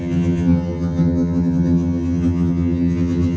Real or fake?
fake